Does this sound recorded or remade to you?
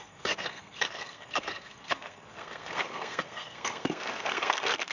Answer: remade